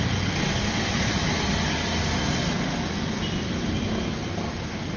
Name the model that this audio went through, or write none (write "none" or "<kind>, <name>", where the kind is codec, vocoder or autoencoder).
none